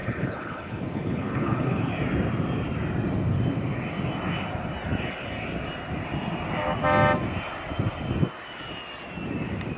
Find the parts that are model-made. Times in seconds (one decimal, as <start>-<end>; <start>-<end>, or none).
0.0-1.9